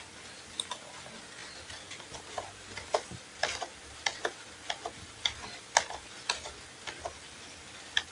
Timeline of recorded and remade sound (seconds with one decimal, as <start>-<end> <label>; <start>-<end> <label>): 0.0-8.1 recorded